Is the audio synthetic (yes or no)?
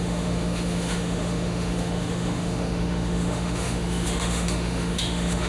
yes